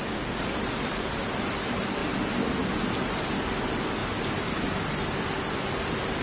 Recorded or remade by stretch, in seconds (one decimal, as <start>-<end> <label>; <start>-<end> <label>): 0.0-6.2 recorded

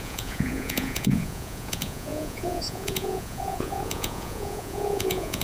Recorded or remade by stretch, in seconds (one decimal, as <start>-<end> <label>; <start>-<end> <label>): 0.0-5.4 remade

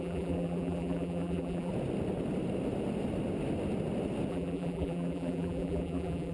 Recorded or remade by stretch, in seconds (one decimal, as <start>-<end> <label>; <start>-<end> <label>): 0.0-1.7 remade; 1.7-4.3 recorded; 4.3-6.3 remade

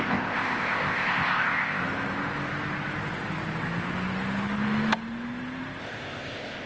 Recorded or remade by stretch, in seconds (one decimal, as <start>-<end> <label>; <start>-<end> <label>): 0.0-1.8 remade; 1.8-5.8 recorded; 5.8-6.7 remade